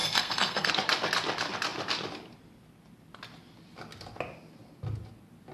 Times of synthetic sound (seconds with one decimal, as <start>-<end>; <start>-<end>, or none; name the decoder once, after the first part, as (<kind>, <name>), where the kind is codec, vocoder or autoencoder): 0.0-0.7 (codec, SNAC)